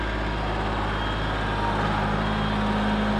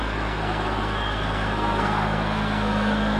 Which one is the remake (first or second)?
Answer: second